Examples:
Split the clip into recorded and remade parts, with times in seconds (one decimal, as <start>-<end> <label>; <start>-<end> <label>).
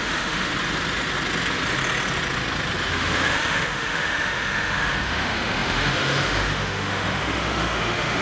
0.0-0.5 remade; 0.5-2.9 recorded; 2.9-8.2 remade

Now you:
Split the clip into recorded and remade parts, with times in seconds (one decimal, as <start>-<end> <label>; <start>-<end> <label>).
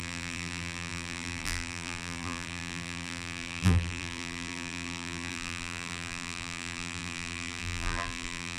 0.0-8.6 remade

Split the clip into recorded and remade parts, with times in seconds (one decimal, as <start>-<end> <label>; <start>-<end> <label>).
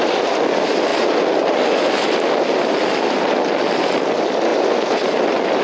0.0-5.6 recorded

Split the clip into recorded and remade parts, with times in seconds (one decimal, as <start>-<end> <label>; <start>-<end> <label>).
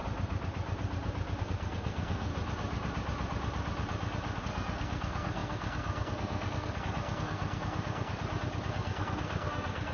0.0-1.4 recorded; 1.4-2.3 remade; 2.3-4.4 recorded; 4.4-8.1 remade; 8.1-8.7 recorded; 8.7-9.9 remade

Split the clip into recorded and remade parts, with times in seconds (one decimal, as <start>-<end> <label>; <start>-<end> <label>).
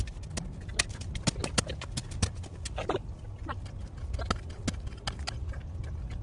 0.0-6.2 recorded